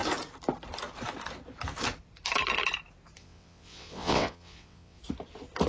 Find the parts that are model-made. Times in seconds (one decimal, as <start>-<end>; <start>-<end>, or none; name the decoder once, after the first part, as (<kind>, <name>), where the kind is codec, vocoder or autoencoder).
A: 3.2-5.0 (vocoder, WaveNeXt)